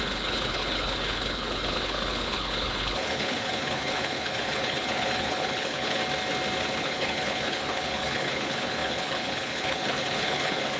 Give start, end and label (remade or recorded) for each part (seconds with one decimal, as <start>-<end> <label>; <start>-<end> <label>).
0.0-6.0 remade; 6.0-6.8 recorded; 6.8-10.8 remade